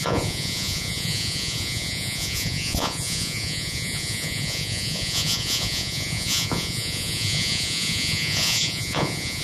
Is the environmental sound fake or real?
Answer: fake